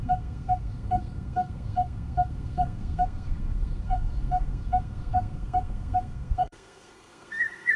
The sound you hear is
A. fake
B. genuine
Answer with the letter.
A